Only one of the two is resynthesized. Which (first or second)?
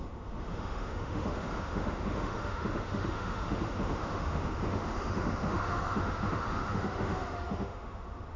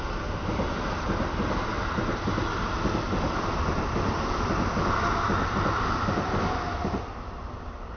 first